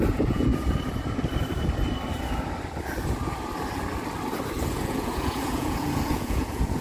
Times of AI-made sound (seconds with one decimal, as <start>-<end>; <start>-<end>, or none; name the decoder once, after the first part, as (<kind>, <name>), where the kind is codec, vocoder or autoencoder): 0.0-0.5 (vocoder, Vocos); 4.6-6.8